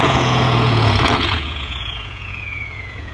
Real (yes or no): no